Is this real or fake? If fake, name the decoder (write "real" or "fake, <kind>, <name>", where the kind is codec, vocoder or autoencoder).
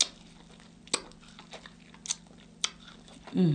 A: real